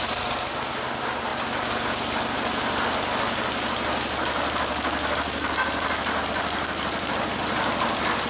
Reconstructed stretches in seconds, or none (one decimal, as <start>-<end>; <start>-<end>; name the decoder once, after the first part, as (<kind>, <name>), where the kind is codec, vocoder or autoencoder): none